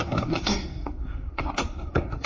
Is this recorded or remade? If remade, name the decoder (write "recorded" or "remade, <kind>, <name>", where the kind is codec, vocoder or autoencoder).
remade, codec, SNAC